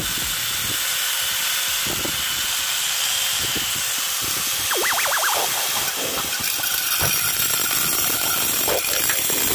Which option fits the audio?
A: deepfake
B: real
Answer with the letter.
A